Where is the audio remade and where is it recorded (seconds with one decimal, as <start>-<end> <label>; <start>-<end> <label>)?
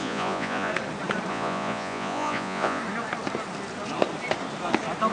0.0-0.7 remade; 0.7-1.3 recorded; 1.3-2.8 remade; 2.8-5.1 recorded